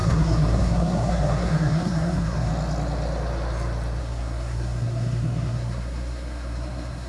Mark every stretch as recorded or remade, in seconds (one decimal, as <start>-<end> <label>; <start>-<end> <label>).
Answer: 0.0-2.5 remade; 2.5-4.0 recorded; 4.0-7.1 remade